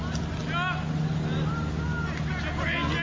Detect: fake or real real